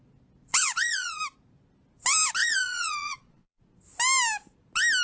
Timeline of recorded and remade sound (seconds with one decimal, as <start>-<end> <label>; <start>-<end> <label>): 0.0-0.5 recorded; 0.5-1.2 remade; 1.2-2.4 recorded; 2.4-3.6 remade; 3.6-5.0 recorded